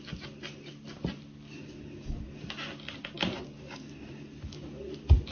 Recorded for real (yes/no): yes